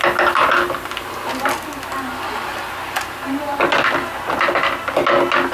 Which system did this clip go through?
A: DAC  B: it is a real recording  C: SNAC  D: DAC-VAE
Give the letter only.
B